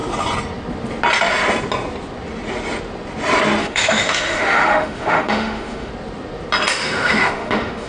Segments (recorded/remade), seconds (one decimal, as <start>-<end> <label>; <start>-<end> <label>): 0.0-3.6 recorded; 3.6-5.9 remade; 5.9-6.7 recorded; 6.7-7.9 remade